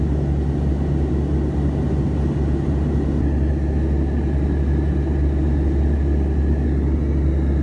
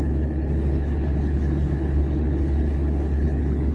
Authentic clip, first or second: first